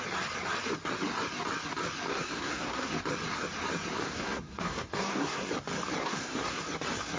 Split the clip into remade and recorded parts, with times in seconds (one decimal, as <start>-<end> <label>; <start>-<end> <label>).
0.0-2.1 recorded; 2.1-2.9 remade; 2.9-4.0 recorded; 4.0-5.5 remade; 5.5-6.0 recorded; 6.0-6.6 remade; 6.6-7.2 recorded